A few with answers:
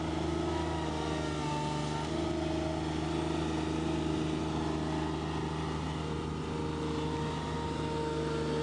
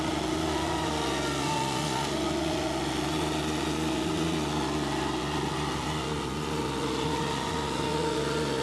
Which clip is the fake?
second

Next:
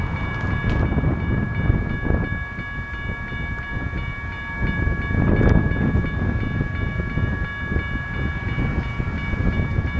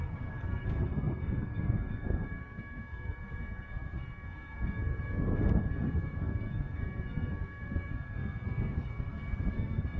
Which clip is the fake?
second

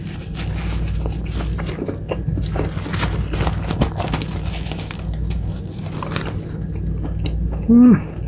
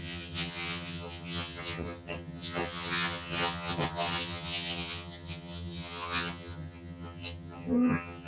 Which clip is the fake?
second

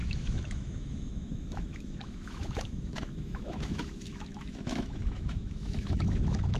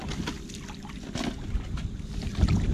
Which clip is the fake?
first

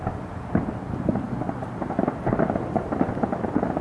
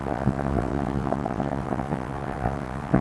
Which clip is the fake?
second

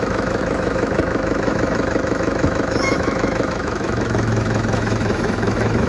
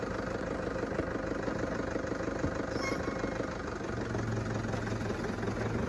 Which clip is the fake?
first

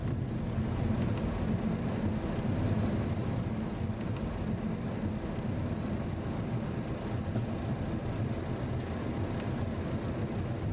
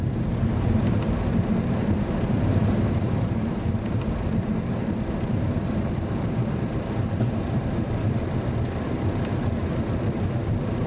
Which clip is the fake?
second